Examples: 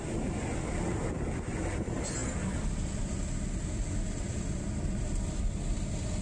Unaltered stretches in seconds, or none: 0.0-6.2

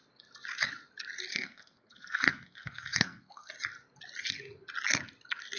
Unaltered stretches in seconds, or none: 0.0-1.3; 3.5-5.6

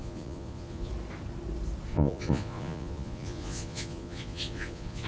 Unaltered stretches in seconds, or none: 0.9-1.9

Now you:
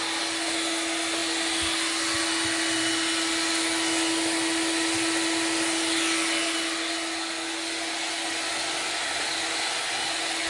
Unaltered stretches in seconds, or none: 0.0-10.5